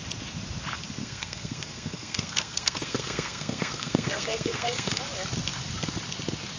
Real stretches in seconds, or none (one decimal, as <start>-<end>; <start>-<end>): 0.0-1.0; 5.0-6.6